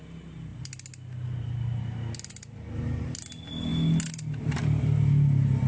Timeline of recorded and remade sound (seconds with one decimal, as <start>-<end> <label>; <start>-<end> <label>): 0.0-5.7 recorded